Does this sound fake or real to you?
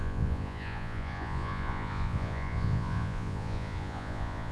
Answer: fake